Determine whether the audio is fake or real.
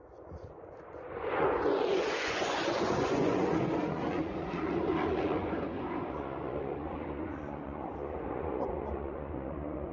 fake